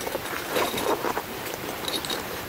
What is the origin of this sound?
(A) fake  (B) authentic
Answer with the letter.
A